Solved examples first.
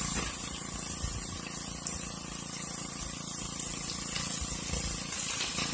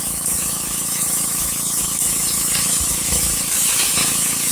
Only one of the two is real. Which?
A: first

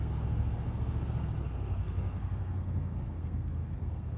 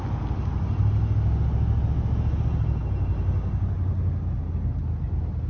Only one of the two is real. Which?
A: second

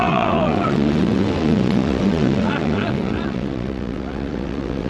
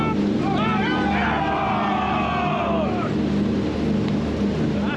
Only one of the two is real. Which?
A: second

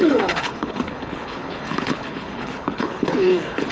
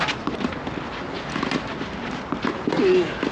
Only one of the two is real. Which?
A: second